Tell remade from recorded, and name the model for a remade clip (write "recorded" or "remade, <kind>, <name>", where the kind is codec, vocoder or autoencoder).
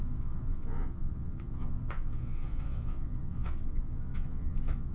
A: remade, vocoder, Vocos